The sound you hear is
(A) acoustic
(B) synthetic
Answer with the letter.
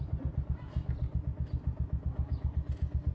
A